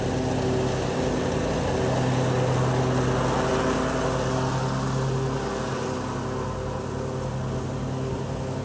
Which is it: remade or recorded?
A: recorded